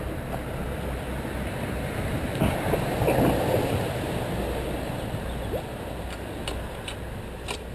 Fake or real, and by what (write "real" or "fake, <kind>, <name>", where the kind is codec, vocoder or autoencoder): real